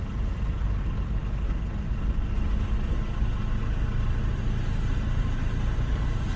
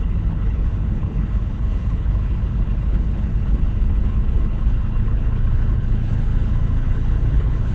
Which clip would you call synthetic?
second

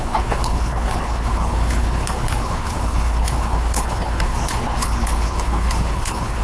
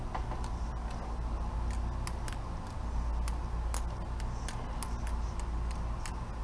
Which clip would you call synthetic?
first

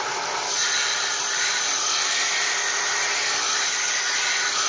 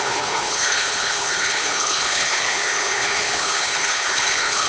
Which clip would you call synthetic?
second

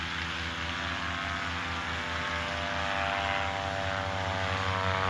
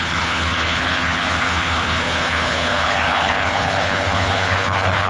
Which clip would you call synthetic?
second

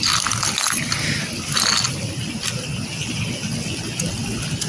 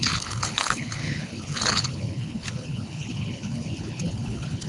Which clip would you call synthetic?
second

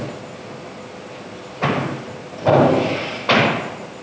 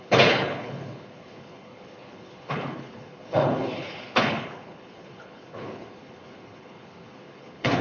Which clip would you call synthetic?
second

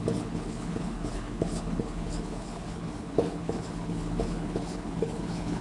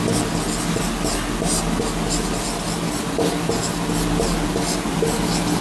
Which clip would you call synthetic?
first